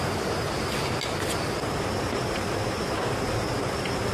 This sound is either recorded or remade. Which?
recorded